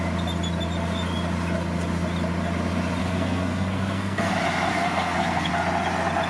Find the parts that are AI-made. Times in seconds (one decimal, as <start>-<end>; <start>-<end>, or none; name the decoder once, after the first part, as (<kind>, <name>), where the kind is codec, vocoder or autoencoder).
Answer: 3.0-4.3 (codec, SNAC); 4.7-5.5